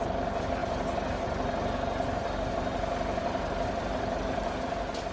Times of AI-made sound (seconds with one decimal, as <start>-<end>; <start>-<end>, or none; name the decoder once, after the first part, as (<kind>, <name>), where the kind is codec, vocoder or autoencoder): none